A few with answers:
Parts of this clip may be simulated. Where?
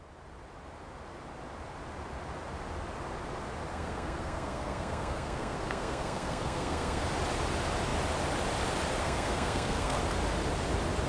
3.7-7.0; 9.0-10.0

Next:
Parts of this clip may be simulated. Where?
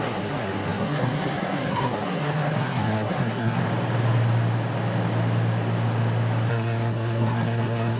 0.0-3.6; 6.5-8.0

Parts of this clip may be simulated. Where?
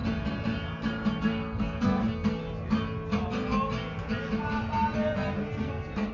1.2-2.4; 5.6-6.1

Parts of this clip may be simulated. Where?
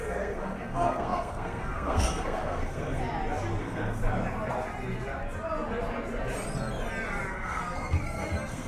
0.0-3.0; 3.6-4.0; 7.3-8.7